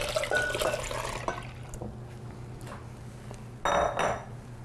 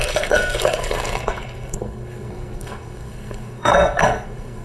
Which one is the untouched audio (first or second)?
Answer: first